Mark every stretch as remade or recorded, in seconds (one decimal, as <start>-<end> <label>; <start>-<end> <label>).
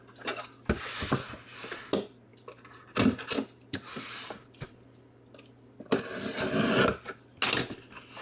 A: 0.0-2.3 recorded; 2.3-6.5 remade; 6.5-8.2 recorded